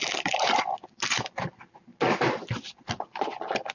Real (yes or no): yes